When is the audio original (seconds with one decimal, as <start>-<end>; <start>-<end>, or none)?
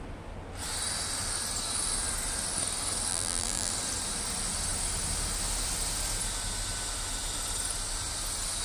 0.0-3.1; 3.7-8.6